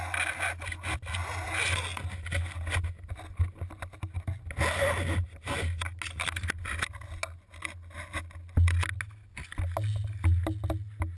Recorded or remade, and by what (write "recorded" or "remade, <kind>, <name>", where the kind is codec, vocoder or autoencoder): recorded